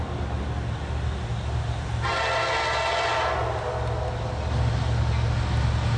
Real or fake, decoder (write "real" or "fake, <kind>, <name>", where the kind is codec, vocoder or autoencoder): real